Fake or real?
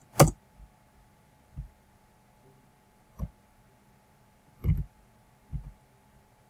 real